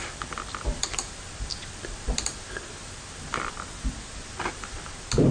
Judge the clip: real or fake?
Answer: fake